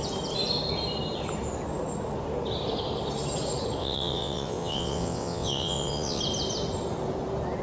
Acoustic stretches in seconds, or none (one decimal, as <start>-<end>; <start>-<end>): 0.0-3.8; 6.2-7.6